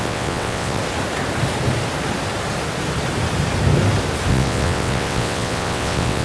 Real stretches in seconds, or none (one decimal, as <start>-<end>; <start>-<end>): 0.8-4.3